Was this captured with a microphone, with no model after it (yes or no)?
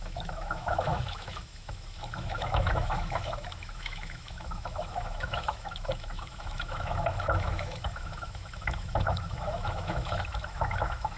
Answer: no